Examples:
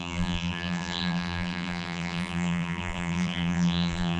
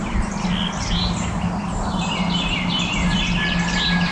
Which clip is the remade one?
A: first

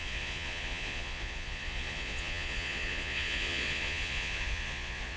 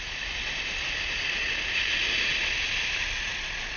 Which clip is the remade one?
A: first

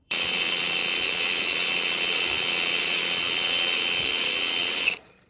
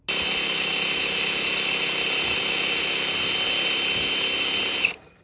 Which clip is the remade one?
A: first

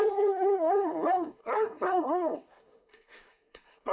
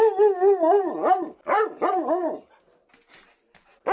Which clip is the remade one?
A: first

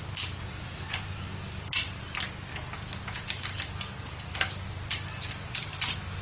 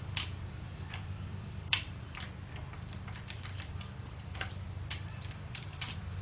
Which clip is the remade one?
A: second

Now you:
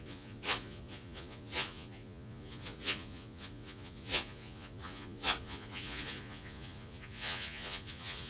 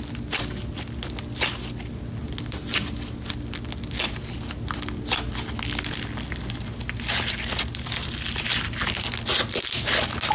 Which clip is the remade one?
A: first